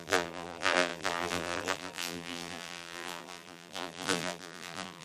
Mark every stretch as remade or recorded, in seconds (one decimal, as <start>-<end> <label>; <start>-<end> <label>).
0.0-5.0 remade